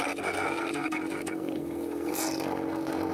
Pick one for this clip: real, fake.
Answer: fake